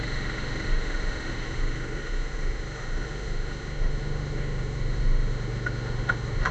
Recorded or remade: remade